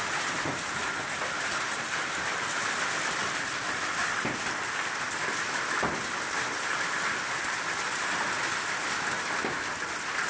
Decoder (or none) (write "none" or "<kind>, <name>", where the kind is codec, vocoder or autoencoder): none